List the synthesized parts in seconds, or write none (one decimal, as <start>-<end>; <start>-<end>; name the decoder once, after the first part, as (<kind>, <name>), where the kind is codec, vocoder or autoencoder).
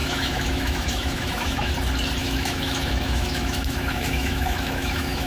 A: 0.0-1.7 (autoencoder, DAC-VAE); 2.2-5.3